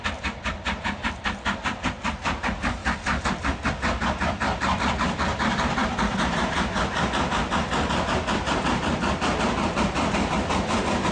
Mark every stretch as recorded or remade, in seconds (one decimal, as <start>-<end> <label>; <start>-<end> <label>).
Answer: 0.0-11.1 recorded